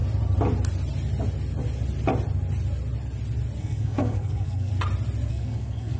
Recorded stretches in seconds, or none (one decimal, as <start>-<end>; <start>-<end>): 0.0-3.6; 4.7-5.3